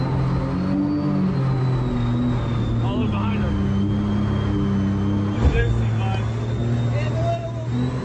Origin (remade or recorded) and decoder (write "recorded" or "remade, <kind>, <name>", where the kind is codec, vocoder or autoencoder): recorded